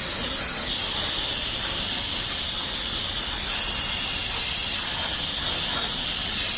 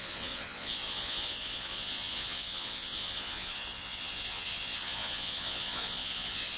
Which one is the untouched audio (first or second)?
first